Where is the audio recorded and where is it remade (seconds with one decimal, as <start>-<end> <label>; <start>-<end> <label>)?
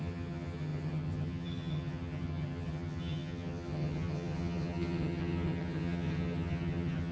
0.0-7.1 remade